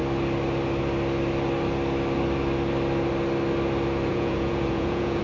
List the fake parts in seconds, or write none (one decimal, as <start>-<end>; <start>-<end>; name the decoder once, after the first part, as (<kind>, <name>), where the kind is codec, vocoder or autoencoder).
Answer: 4.1-5.2 (vocoder, Vocos)